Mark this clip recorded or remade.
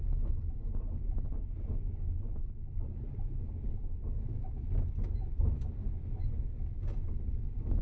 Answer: recorded